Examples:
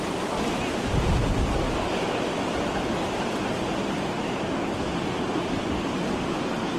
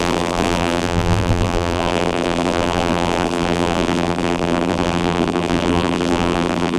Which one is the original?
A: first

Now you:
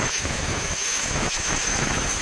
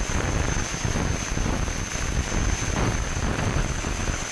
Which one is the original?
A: second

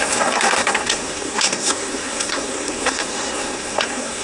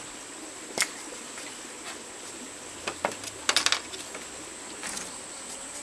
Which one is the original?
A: second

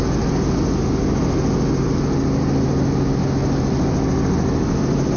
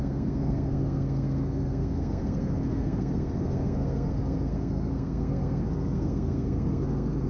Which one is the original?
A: first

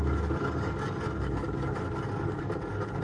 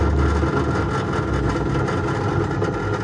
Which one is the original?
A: second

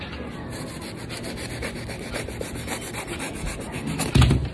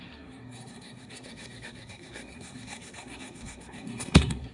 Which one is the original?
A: first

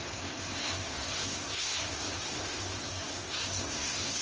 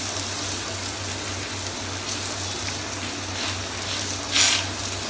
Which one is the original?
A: second